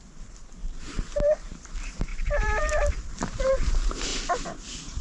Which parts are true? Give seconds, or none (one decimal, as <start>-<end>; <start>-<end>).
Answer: 4.1-5.0

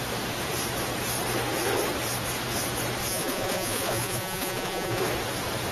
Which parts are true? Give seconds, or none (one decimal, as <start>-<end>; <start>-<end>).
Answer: 0.0-3.1; 5.0-5.7